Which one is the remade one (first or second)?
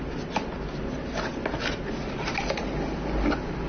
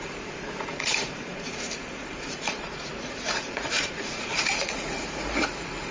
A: second